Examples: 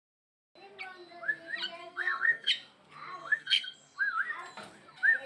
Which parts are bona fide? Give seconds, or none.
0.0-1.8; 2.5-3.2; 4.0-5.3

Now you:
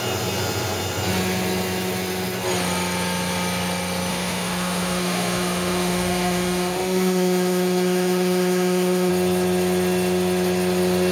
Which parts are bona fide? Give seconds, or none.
0.0-4.1; 9.1-11.1

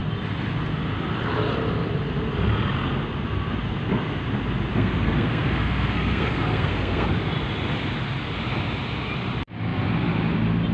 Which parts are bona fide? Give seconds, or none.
0.0-4.7; 7.1-10.7